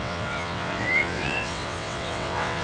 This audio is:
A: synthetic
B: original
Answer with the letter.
A